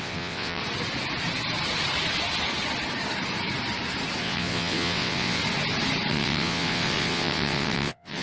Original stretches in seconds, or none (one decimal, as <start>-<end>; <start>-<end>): 0.6-4.2; 5.4-6.1